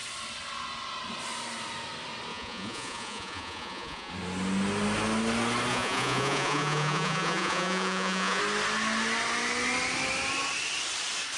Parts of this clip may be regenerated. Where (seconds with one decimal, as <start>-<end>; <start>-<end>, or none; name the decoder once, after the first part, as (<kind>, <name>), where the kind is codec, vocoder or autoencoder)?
2.3-4.1 (vocoder, Vocos); 5.7-8.4